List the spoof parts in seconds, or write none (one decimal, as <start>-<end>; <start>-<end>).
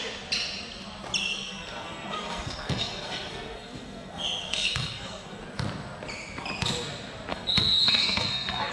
1.3-5.4; 7.3-8.7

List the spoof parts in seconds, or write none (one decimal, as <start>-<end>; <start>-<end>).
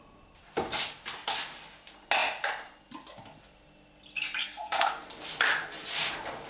4.4-4.9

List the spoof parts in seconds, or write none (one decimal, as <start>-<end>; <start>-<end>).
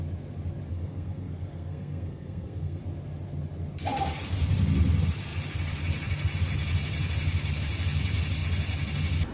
0.7-2.8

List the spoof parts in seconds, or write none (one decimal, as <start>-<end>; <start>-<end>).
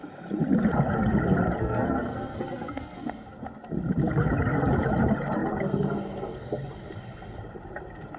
1.6-3.1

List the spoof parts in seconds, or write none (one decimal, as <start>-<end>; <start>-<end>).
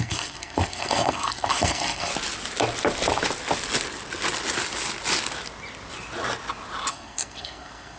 0.0-2.1; 6.9-8.0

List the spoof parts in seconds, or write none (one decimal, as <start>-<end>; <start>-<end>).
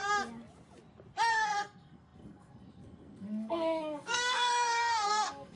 1.3-5.6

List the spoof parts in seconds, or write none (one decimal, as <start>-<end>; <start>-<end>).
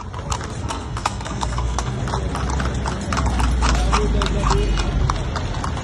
0.6-2.0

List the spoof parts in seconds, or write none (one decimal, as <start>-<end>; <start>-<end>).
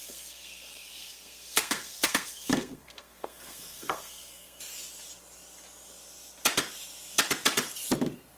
0.0-4.6